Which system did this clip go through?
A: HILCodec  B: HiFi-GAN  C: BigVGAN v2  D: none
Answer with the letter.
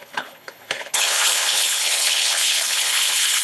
A